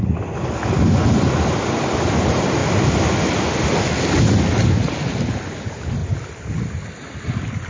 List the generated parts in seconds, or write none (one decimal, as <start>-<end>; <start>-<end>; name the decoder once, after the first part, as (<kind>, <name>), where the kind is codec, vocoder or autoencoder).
none